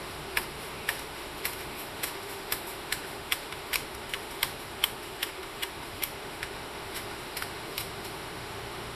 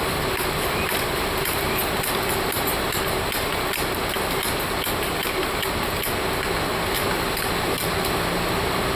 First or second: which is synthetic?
first